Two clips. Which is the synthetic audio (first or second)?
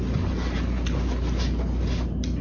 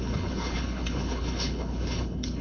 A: second